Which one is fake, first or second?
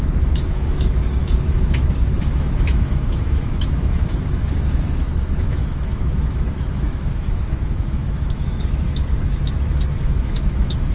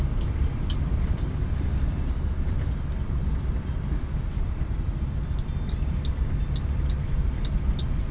first